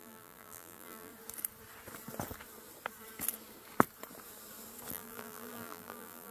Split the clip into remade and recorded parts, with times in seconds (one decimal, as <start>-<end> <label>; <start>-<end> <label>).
0.0-1.1 remade; 1.1-4.9 recorded; 4.9-6.3 remade